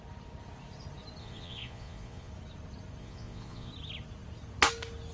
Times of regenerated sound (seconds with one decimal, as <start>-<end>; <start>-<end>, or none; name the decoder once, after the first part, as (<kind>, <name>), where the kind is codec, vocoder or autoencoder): 1.2-2.3 (vocoder, Vocos); 3.0-3.7

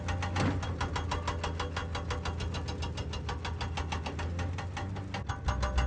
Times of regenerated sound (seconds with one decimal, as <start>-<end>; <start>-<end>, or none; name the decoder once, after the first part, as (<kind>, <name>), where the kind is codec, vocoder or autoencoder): none